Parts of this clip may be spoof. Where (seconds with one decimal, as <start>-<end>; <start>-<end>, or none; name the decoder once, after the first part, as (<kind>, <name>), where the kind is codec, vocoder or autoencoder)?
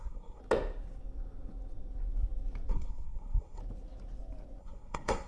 0.0-0.4 (codec, SNAC); 2.7-3.6; 4.6-5.3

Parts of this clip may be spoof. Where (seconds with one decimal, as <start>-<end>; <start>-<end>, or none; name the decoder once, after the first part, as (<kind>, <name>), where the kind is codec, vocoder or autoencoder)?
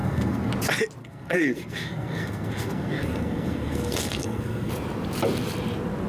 0.0-0.5 (codec, SNAC); 1.0-4.7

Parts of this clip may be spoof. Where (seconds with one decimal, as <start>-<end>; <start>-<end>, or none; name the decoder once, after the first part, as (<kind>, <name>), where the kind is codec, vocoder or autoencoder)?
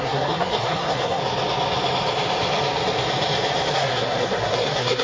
0.0-1.2 (codec, SNAC); 3.7-5.0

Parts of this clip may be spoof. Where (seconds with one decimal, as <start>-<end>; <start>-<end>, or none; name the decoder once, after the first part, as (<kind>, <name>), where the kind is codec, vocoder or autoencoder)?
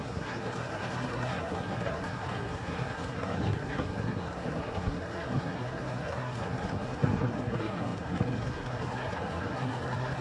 0.0-10.2 (codec, SNAC)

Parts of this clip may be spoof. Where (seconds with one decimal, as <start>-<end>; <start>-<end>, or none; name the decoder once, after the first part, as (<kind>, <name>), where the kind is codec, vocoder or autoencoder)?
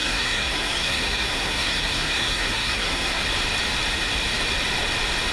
0.0-3.2 (codec, SNAC)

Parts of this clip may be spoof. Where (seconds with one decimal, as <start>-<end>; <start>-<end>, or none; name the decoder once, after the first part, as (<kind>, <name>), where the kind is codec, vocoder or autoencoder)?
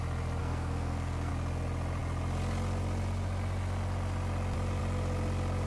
0.4-1.3 (codec, SNAC)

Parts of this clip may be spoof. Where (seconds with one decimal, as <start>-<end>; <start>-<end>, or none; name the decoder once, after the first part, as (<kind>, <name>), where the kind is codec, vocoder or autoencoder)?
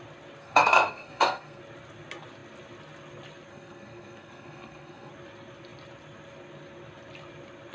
0.4-1.6 (codec, SNAC); 3.5-5.1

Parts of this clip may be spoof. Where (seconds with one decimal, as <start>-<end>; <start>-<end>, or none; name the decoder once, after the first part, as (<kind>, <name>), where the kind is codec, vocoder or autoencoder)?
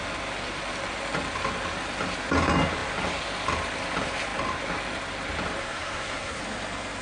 5.6-6.4 (codec, SNAC)